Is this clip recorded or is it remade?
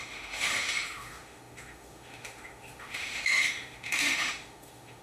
remade